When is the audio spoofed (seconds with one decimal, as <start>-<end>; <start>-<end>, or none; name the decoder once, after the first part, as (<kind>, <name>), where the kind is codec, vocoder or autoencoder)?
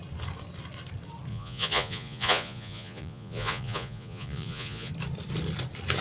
1.3-4.9 (vocoder, Vocos)